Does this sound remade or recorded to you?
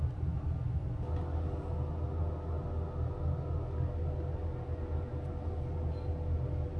recorded